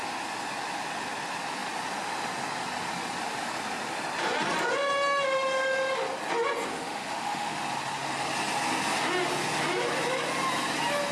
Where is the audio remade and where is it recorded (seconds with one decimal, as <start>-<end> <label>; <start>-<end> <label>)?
0.0-6.7 recorded; 6.7-7.6 remade; 7.6-11.1 recorded